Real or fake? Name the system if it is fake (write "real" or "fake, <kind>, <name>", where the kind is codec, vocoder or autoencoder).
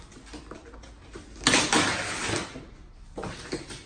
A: real